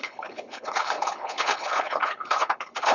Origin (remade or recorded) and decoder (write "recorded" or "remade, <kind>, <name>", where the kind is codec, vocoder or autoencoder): remade, codec, HILCodec